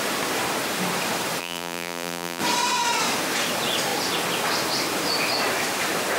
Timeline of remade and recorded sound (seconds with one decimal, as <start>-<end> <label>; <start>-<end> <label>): 0.0-1.4 recorded; 1.4-2.4 remade; 2.4-6.2 recorded